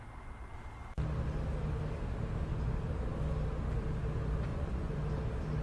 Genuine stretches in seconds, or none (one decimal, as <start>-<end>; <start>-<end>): 0.0-4.5; 5.0-5.6